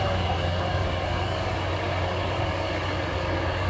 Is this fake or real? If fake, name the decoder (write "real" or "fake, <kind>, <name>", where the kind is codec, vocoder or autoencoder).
fake, codec, DAC